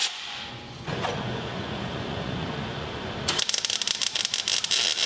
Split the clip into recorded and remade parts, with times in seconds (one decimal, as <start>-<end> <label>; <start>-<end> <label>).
0.0-3.1 remade; 3.1-5.1 recorded